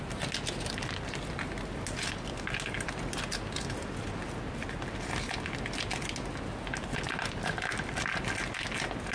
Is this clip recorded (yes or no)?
yes